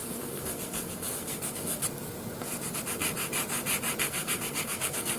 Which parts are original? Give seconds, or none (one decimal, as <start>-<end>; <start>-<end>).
1.8-4.0